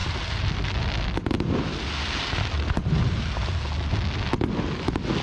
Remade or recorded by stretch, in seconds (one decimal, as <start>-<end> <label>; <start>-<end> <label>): 0.0-3.1 remade; 3.1-5.2 recorded

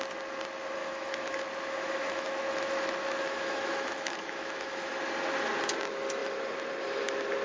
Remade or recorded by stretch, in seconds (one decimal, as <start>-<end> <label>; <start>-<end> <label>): 0.0-0.8 recorded; 0.8-4.9 remade; 4.9-7.4 recorded